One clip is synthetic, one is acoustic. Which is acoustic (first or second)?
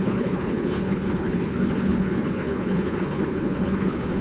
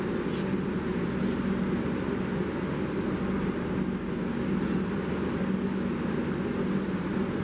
second